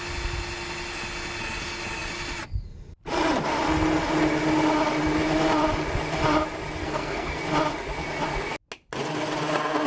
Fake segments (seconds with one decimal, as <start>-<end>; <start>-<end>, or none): 6.8-7.4